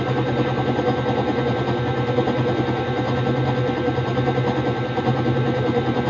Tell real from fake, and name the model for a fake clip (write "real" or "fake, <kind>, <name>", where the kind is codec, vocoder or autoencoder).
real